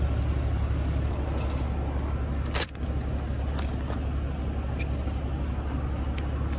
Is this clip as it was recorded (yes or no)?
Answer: yes